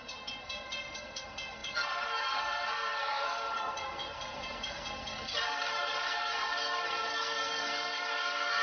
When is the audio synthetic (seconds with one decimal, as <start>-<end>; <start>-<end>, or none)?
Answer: 0.0-8.6